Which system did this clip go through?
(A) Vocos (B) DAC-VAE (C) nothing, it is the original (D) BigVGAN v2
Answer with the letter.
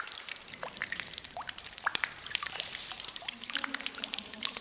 D